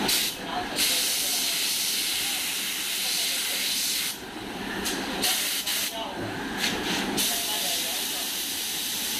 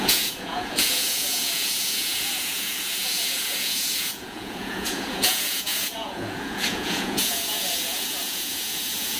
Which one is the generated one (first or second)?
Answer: second